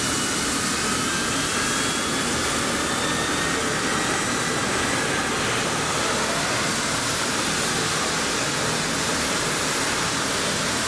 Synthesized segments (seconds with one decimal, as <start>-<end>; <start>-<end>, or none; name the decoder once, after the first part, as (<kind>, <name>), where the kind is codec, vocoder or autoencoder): 9.1-10.1 (vocoder, BigVGAN v2)